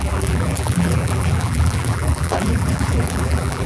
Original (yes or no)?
no